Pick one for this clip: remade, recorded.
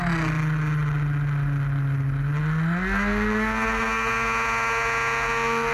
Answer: recorded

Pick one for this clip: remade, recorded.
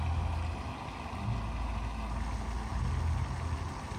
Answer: recorded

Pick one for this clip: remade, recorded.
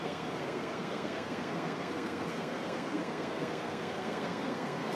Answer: remade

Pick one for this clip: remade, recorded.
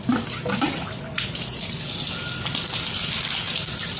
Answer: recorded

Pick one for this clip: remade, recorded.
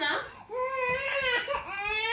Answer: recorded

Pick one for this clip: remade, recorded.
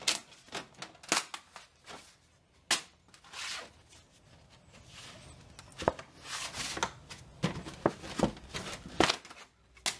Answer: recorded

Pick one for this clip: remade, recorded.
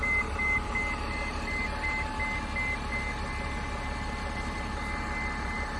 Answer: recorded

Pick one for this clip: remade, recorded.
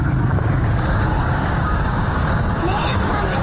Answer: remade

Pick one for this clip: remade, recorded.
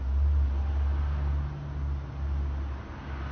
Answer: recorded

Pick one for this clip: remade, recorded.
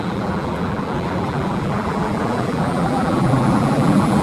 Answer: remade